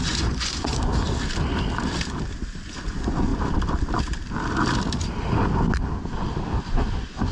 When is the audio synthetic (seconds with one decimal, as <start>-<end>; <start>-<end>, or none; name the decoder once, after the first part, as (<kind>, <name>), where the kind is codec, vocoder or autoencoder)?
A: 0.0-0.9 (vocoder, Vocos); 2.8-3.3; 6.6-7.3